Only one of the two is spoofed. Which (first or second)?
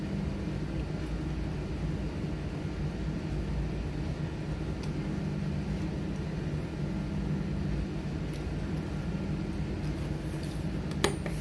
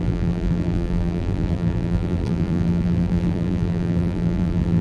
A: second